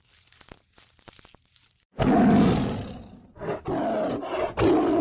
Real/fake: real